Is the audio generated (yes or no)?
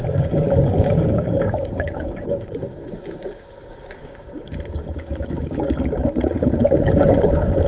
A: yes